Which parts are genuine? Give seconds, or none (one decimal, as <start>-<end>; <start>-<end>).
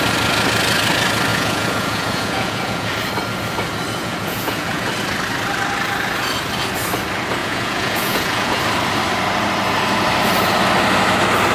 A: 0.0-1.3; 2.9-4.0; 4.9-7.4; 8.6-11.5